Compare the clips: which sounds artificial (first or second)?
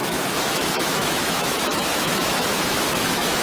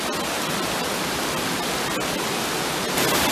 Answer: first